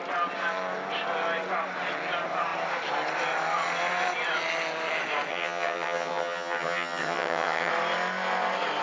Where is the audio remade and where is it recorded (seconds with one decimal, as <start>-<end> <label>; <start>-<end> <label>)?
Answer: 0.0-5.3 recorded; 5.3-7.7 remade; 7.7-8.8 recorded